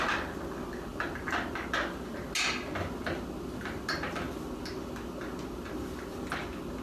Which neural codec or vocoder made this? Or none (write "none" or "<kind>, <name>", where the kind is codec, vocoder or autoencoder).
none